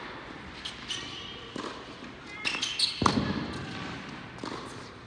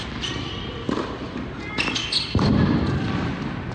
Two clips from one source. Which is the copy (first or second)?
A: second